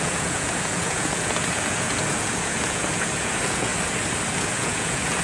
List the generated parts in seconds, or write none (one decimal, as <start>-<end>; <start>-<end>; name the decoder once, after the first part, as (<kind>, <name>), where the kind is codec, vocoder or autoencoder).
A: 0.0-3.7 (vocoder, Vocos); 4.4-5.2